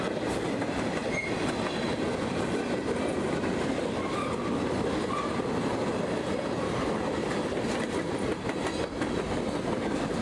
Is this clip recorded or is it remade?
recorded